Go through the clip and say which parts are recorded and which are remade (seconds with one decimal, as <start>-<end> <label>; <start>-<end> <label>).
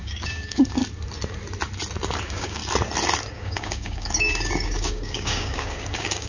0.0-0.8 remade; 0.8-2.2 recorded; 2.2-2.6 remade; 2.6-3.3 recorded; 3.3-6.3 remade